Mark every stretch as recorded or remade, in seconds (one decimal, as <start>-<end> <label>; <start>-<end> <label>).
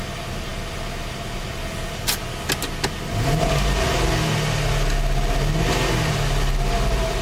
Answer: 0.0-7.2 recorded